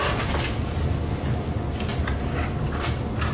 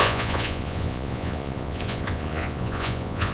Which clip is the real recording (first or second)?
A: first